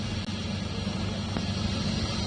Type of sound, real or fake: real